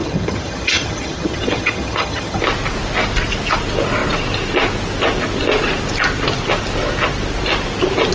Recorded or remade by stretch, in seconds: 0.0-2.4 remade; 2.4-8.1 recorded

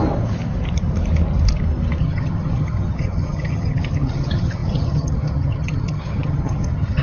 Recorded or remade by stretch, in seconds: 0.0-2.0 recorded; 2.0-7.0 remade

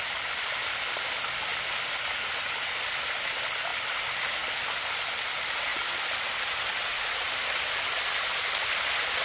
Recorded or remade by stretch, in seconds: 0.0-9.2 recorded

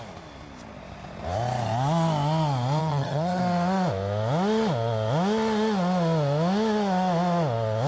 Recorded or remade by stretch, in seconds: 0.0-2.8 recorded; 2.8-3.4 remade; 3.4-7.9 recorded